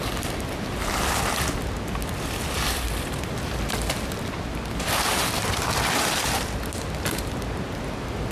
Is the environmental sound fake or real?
real